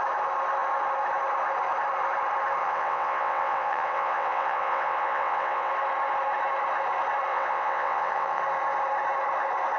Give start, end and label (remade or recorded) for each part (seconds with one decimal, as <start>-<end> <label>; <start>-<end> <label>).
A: 0.0-2.6 recorded; 2.6-5.7 remade; 5.7-7.3 recorded; 7.3-8.4 remade; 8.4-9.8 recorded